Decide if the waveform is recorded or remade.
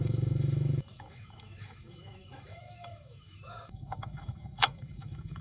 remade